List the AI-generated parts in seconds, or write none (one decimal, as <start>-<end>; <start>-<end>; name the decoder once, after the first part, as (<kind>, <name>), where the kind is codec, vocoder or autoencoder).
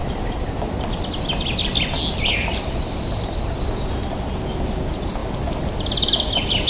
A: none